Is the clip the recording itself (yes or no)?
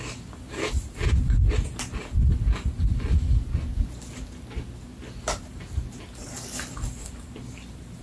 yes